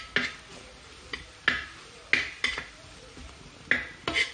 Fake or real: real